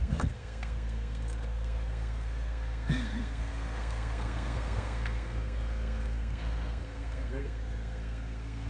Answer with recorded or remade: remade